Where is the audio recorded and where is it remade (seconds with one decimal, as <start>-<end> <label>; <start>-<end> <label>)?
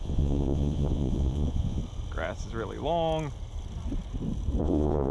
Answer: 0.0-1.8 remade; 1.8-4.6 recorded; 4.6-5.1 remade